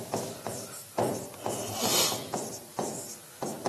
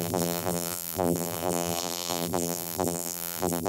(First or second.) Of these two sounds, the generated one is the second